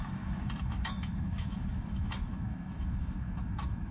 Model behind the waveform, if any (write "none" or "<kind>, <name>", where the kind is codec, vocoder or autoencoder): autoencoder, DAC-VAE